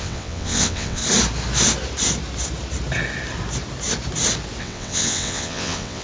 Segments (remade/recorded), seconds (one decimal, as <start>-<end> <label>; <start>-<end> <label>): 0.0-1.0 remade; 1.0-4.6 recorded; 4.6-6.0 remade